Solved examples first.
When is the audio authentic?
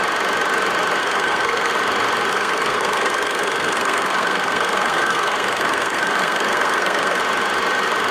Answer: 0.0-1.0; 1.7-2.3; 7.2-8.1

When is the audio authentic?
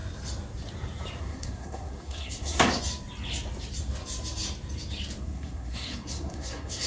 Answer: 0.0-1.2; 2.6-5.2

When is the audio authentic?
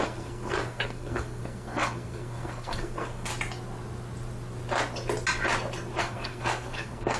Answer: 3.3-6.0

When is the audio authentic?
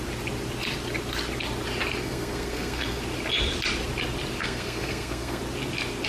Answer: 0.0-2.0; 3.0-4.4; 5.4-6.1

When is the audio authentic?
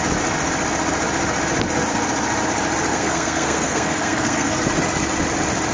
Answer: 0.0-2.9; 4.6-5.7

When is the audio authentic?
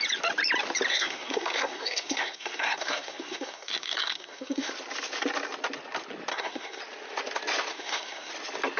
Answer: 0.0-0.9; 4.7-6.3; 6.8-7.7; 8.3-8.8